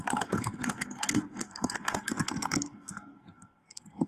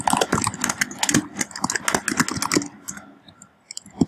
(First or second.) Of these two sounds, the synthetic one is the first